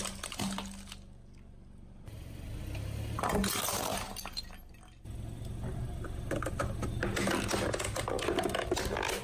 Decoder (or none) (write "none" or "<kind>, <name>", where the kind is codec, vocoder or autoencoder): none